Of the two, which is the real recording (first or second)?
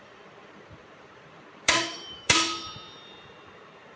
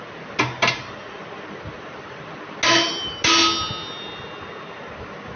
second